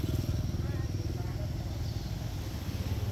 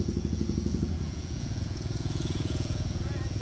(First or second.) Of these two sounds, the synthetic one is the second